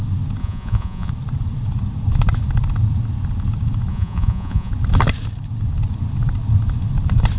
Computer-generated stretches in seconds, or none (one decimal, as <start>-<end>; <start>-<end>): 0.4-1.1; 3.9-4.7